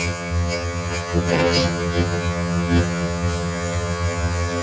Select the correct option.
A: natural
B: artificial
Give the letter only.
B